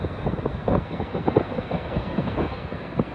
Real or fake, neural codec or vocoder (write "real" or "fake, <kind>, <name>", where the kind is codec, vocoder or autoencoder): fake, codec, SNAC